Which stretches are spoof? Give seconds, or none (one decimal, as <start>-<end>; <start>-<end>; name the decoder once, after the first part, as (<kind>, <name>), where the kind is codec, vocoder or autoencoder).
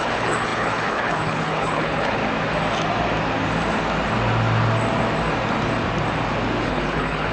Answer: 0.0-2.2 (codec, HILCodec); 6.6-7.3